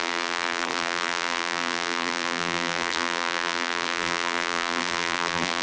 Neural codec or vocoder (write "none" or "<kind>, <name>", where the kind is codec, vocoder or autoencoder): vocoder, BigVGAN v2